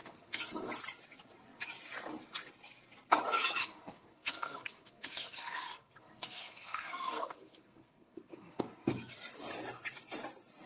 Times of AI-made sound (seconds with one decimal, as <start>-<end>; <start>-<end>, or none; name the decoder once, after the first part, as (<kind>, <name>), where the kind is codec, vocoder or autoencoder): 0.0-0.7 (codec, SNAC); 3.6-8.6